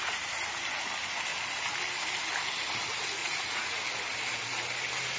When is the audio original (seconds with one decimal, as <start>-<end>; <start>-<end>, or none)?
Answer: 0.0-3.2; 3.8-5.2